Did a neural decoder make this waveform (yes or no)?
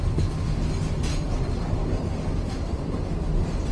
no